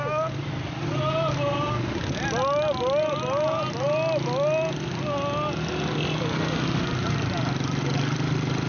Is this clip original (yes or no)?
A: yes